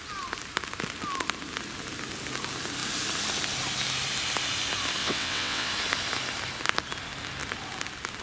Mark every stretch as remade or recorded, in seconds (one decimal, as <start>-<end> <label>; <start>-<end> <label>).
0.0-5.0 recorded; 5.0-5.7 remade; 5.7-8.2 recorded